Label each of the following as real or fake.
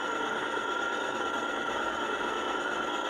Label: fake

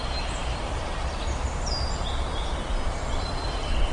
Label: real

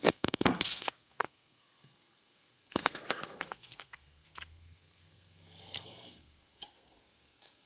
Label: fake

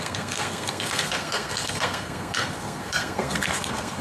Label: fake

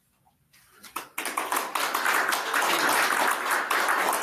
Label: real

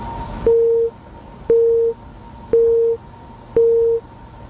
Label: real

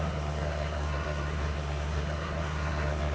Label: fake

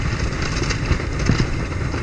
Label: real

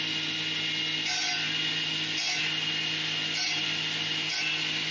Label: real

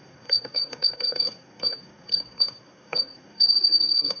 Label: fake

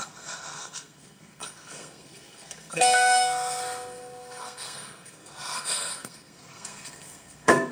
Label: fake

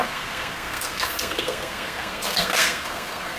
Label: fake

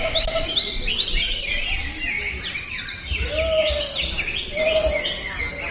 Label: real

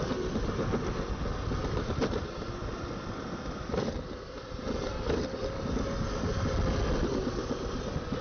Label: real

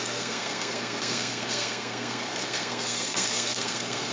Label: fake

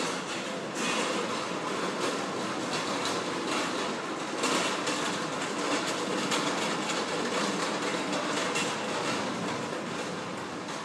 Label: real